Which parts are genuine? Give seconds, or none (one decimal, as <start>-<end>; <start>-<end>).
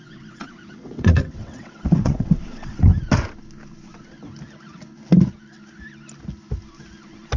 2.9-7.4